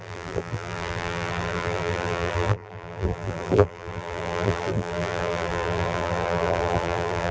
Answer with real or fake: fake